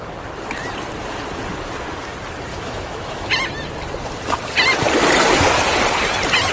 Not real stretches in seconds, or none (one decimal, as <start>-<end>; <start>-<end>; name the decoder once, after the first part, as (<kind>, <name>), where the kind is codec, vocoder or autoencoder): 2.5-3.3 (autoencoder, DAC-VAE)